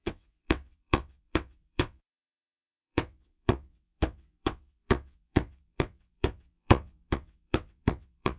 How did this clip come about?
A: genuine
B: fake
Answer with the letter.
B